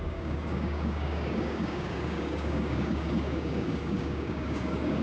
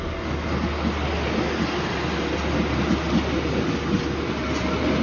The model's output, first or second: first